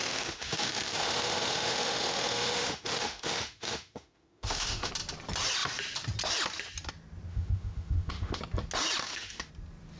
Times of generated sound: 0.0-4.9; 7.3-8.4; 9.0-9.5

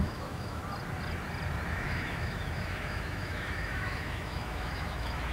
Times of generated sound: 0.0-0.6; 1.7-5.3

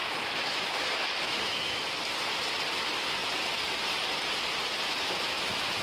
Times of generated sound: 0.0-1.8

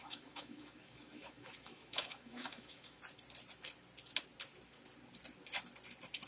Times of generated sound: 0.0-3.0

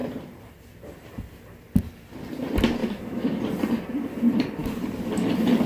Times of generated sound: 2.8-3.4

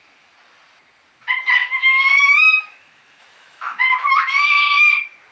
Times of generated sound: 1.6-4.8

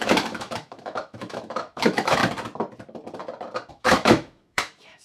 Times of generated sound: 0.0-2.2; 3.7-5.0

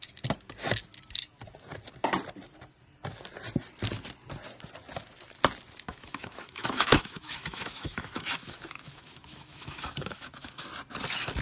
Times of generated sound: 5.9-10.7